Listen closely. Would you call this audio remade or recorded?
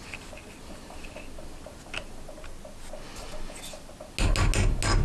recorded